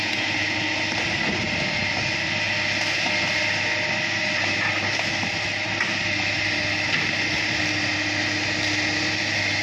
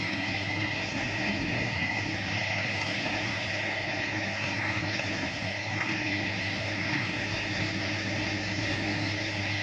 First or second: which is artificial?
second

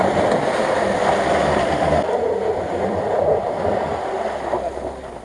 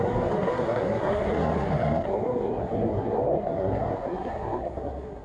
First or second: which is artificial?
second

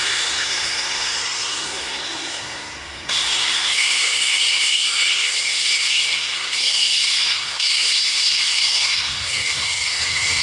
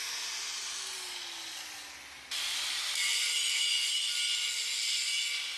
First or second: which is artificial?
first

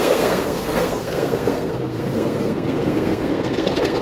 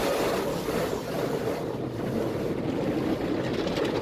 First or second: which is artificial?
first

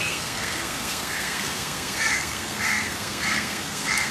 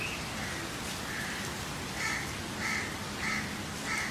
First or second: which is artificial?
first